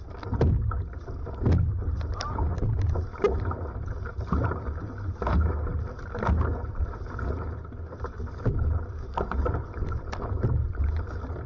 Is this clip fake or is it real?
real